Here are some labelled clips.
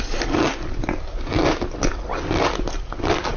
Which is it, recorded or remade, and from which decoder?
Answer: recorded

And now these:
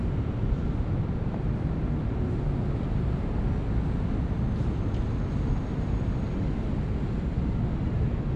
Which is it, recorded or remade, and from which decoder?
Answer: recorded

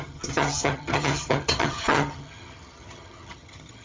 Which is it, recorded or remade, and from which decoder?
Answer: remade, vocoder, HiFi-GAN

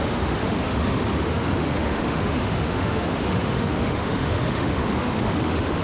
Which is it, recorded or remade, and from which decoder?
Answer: remade, autoencoder, DAC-VAE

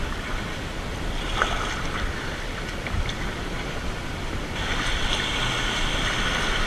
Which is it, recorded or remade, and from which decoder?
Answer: recorded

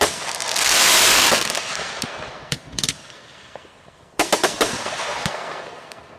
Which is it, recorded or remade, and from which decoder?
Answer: remade, codec, SNAC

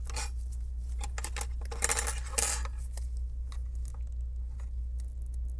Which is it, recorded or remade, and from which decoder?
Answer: recorded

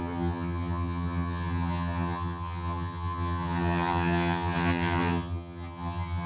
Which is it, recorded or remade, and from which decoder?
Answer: remade, vocoder, HiFi-GAN